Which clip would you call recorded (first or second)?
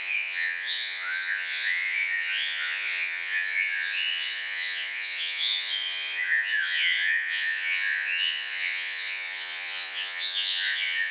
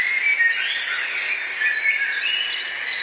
second